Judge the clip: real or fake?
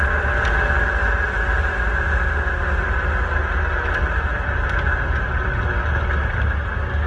real